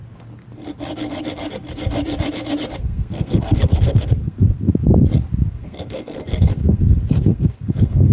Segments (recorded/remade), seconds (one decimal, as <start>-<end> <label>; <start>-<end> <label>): 0.0-2.8 recorded; 2.8-4.7 remade; 4.7-5.5 recorded; 5.5-8.1 remade